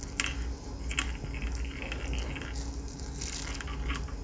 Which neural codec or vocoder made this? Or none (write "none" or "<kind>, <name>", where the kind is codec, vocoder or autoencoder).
none